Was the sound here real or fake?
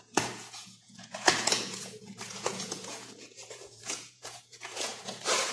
fake